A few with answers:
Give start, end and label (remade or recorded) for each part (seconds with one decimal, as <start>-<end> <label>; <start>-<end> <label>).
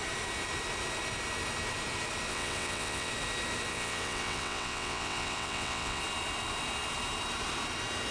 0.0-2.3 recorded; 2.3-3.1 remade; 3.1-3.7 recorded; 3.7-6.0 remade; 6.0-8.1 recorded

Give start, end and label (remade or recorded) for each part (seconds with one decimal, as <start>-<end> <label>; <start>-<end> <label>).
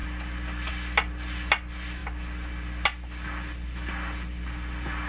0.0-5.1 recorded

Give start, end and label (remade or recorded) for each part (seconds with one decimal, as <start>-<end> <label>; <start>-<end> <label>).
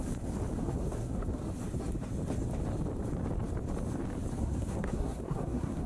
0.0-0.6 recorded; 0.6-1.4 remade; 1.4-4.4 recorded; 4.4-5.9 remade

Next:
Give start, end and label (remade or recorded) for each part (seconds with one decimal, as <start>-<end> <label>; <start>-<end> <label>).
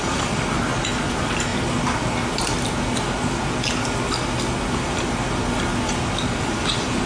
0.0-1.5 remade; 1.5-4.8 recorded; 4.8-5.7 remade; 5.7-6.3 recorded; 6.3-7.1 remade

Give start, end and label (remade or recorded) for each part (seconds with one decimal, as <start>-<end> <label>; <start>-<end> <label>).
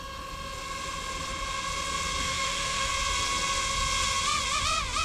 0.0-2.2 recorded; 2.2-2.9 remade; 2.9-5.0 recorded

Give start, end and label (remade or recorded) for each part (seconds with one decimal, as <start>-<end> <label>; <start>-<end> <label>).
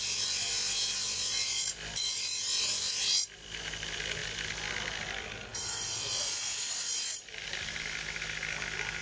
0.0-9.0 recorded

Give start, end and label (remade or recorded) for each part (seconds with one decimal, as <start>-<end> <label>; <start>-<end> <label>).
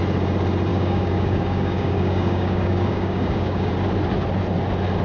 0.0-0.7 recorded; 0.7-3.7 remade; 3.7-5.0 recorded